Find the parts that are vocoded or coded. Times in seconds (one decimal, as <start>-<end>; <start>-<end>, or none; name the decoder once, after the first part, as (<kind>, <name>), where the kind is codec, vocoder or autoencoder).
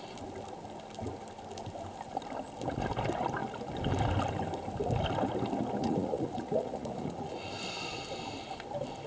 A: 5.8-7.5 (vocoder, Vocos)